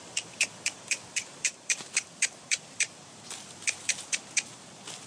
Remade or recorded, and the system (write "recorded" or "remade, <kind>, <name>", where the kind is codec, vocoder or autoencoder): remade, vocoder, BigVGAN v2